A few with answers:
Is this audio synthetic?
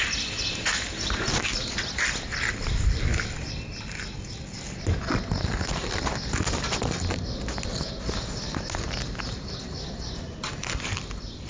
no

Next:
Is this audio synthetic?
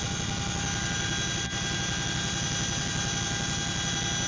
no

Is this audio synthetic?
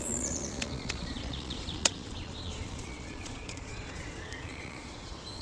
yes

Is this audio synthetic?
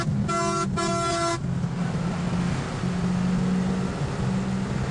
no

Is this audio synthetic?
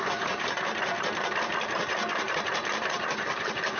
yes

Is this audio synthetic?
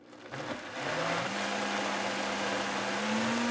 no